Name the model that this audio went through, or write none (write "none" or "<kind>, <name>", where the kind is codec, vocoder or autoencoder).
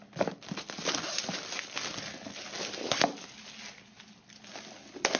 none